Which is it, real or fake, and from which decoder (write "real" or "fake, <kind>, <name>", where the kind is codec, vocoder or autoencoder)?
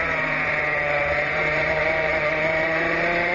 fake, vocoder, BigVGAN v2